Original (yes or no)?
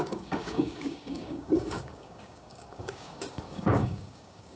no